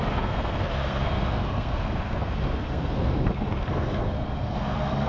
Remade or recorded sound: remade